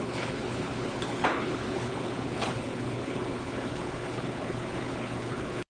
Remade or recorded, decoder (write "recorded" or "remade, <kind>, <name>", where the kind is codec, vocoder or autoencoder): remade, codec, HILCodec